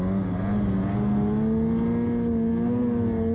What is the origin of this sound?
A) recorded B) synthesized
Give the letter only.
A